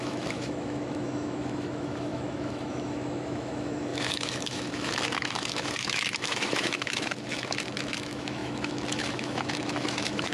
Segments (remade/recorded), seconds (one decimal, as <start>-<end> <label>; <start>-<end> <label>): 0.0-10.3 remade